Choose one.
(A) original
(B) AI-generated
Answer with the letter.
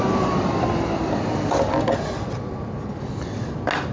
A